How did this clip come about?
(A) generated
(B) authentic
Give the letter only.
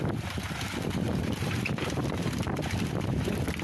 A